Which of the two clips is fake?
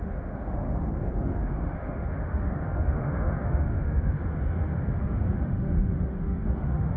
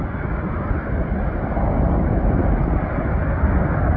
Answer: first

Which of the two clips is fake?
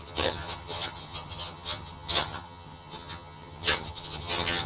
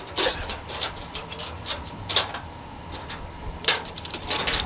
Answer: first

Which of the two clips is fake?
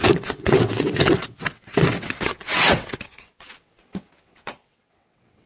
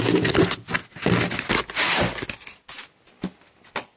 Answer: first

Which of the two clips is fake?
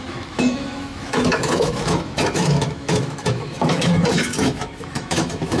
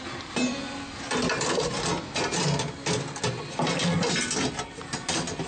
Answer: first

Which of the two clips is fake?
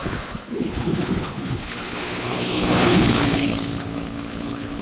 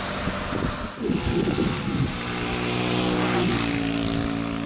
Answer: first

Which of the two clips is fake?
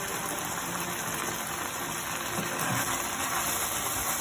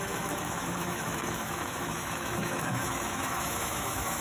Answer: second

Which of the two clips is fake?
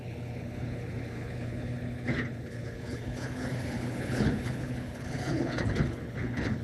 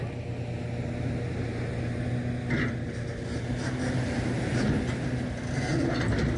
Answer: first